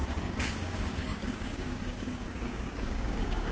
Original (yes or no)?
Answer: no